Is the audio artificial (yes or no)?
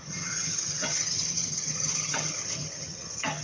yes